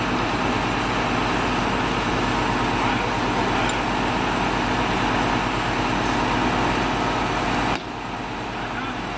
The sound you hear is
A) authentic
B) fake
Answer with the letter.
A